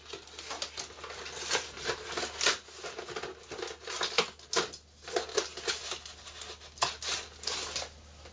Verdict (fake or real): real